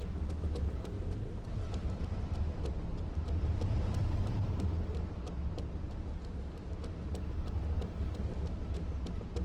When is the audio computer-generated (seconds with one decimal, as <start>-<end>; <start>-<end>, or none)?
1.5-5.9